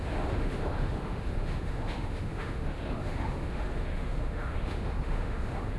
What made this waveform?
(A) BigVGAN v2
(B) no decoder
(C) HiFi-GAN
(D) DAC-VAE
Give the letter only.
D